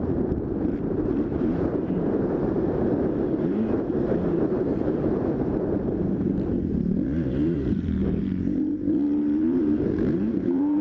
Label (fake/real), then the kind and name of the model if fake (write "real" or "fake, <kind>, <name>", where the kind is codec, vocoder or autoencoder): fake, vocoder, BigVGAN v2